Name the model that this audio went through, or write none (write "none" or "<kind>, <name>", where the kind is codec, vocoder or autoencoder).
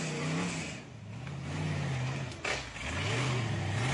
none